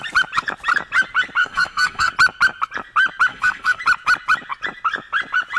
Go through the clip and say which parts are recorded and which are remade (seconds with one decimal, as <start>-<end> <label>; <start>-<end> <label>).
0.0-1.4 recorded; 1.4-2.1 remade; 2.1-3.3 recorded; 3.3-3.8 remade; 3.8-5.6 recorded